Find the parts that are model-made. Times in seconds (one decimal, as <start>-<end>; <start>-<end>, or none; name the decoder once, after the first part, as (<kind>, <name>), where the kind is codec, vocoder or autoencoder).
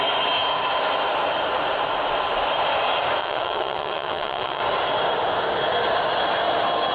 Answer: 3.2-4.6 (vocoder, WaveNeXt)